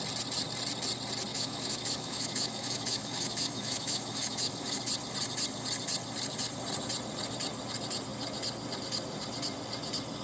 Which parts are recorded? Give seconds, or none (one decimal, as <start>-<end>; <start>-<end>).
0.0-1.3; 4.8-10.2